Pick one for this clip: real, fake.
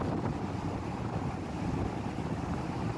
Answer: real